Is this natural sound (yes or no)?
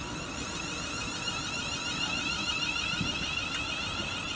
yes